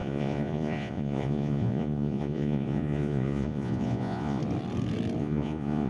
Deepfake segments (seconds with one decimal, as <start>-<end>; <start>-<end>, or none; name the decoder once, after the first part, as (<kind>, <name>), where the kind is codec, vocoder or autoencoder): 0.0-4.4 (vocoder, Vocos); 5.2-5.9